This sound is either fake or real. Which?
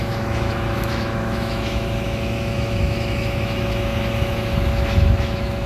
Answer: fake